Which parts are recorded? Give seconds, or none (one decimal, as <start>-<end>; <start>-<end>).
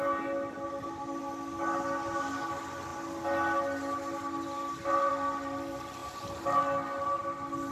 0.0-7.7